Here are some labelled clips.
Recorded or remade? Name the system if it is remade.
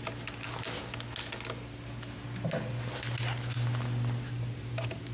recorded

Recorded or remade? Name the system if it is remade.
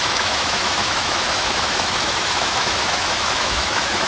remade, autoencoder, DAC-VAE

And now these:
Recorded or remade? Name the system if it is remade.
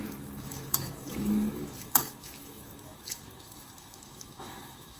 remade, autoencoder, DAC-VAE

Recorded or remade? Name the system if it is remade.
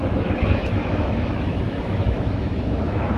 remade, autoencoder, DAC-VAE